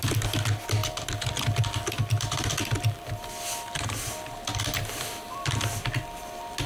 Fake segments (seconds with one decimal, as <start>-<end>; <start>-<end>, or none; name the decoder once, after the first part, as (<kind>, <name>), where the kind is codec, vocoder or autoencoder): 0.8-3.3 (vocoder, BigVGAN v2); 4.5-5.8

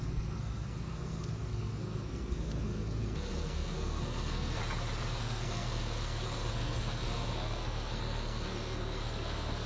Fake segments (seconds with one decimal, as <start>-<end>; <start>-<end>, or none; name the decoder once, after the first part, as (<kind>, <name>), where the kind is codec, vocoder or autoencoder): 0.0-4.6 (codec, SNAC); 5.2-9.7

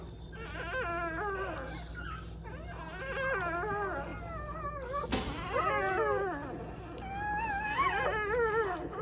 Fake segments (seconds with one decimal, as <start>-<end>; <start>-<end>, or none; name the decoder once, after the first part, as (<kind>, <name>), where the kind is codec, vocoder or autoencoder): none

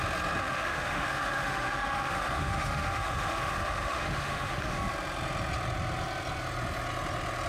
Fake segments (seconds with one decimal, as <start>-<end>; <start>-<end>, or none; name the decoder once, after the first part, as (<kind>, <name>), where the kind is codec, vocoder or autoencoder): 0.4-4.9 (autoencoder, DAC-VAE)

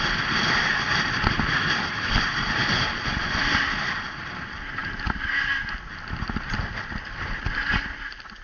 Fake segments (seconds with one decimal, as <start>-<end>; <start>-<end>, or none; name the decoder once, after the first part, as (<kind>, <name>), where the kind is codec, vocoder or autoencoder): none

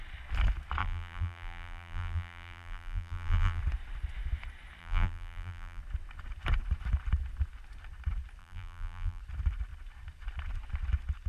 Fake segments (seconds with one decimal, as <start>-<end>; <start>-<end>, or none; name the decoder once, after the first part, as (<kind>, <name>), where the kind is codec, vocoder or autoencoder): 0.8-3.6 (vocoder, BigVGAN v2); 4.8-5.8; 8.4-9.2

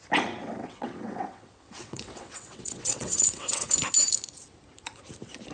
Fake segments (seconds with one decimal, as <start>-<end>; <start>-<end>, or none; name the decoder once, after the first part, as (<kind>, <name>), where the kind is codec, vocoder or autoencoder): 0.4-3.7 (vocoder, WaveNeXt)